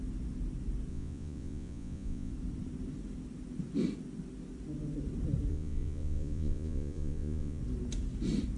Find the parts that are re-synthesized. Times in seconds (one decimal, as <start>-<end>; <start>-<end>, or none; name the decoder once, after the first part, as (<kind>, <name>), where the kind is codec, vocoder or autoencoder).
0.9-2.3 (vocoder, Vocos); 5.5-7.6